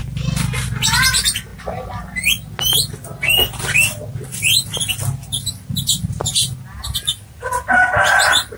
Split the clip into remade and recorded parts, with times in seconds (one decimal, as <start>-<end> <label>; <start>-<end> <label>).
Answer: 0.0-8.6 recorded